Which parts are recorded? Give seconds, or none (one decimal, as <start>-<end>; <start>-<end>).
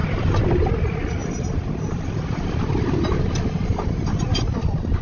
0.7-1.2; 4.2-5.0